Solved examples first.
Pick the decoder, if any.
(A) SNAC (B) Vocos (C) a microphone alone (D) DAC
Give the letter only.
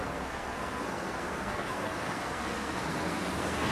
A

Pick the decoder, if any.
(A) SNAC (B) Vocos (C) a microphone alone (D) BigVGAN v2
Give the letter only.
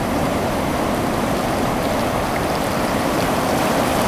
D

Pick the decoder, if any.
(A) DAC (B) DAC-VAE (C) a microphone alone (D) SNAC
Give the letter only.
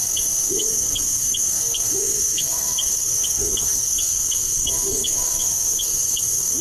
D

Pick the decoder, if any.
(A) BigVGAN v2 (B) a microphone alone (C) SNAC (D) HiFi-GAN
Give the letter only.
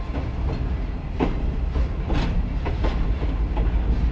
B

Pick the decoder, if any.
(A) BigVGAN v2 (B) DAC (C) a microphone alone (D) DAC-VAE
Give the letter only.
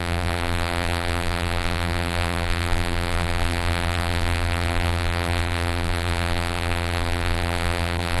A